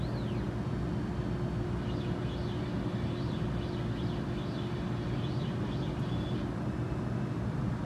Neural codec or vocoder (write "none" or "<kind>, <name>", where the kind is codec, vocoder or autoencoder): none